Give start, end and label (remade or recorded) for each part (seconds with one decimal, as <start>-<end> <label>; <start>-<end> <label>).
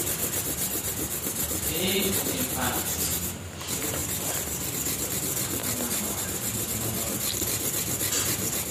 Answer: 0.0-2.0 remade; 2.0-4.0 recorded; 4.0-5.0 remade; 5.0-8.7 recorded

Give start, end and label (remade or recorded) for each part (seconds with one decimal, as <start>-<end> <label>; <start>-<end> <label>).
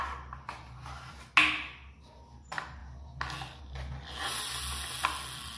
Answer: 0.0-1.3 remade; 1.3-5.6 recorded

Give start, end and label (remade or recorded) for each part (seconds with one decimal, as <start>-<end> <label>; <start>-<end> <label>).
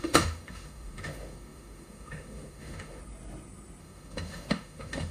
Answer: 0.0-3.0 remade; 3.0-3.8 recorded; 3.8-5.1 remade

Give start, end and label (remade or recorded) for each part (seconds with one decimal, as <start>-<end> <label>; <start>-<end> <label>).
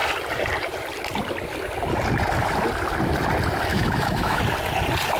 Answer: 0.0-3.7 recorded; 3.7-4.4 remade; 4.4-5.2 recorded